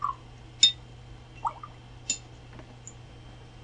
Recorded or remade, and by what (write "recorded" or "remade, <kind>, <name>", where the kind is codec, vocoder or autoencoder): recorded